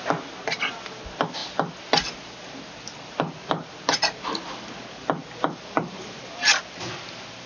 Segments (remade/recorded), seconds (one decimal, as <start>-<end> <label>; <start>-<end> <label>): 0.0-7.5 recorded